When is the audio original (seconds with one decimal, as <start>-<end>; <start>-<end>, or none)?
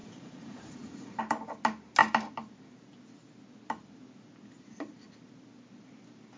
1.2-6.4